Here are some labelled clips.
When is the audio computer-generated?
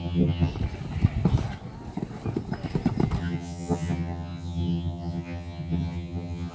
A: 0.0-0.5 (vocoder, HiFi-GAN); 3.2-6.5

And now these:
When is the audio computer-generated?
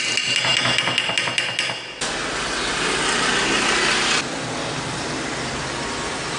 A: none